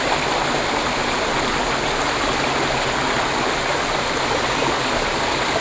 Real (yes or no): yes